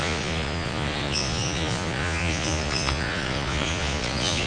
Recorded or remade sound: remade